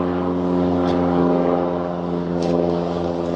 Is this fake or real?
fake